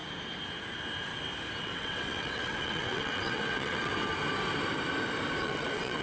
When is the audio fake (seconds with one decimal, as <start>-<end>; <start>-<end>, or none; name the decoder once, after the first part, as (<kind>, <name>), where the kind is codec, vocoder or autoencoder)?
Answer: 1.6-3.9 (vocoder, WaveNeXt); 5.4-6.0